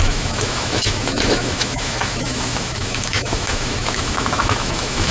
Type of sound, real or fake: fake